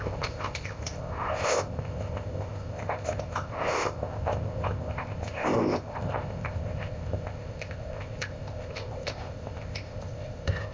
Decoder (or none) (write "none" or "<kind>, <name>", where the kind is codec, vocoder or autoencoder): codec, ZipCodec